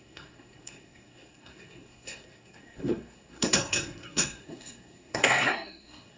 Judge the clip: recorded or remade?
remade